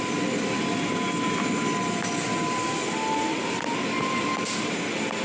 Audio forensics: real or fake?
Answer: real